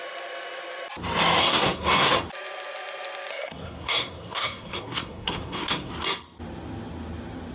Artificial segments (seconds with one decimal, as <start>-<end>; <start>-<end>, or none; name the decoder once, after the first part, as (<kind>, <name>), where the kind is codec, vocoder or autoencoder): 1.4-2.1 (codec, SNAC); 3.3-5.9